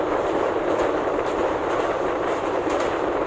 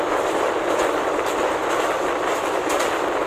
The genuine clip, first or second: second